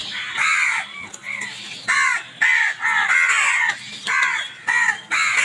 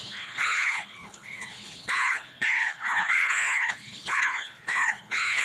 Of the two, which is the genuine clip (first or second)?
first